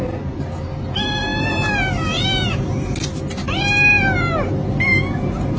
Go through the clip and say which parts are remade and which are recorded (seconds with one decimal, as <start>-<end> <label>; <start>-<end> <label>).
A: 0.0-5.6 recorded